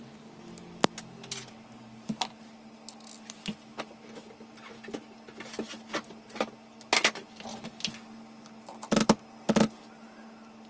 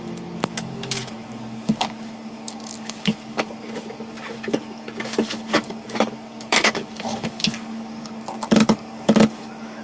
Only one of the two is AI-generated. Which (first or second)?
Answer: second